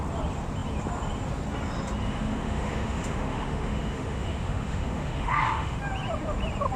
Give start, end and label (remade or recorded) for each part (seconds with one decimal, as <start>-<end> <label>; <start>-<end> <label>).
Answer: 0.0-2.0 recorded; 2.0-5.8 remade; 5.8-6.8 recorded